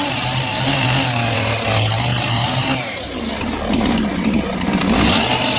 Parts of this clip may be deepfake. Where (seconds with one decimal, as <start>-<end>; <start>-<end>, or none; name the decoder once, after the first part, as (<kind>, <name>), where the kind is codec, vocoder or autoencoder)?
none